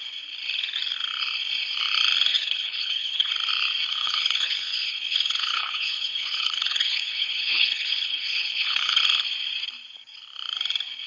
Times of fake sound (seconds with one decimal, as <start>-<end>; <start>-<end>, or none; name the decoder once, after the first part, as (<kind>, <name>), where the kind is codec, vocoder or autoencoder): 2.3-3.3 (codec, HILCodec); 3.9-9.0